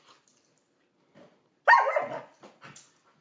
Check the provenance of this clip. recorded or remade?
recorded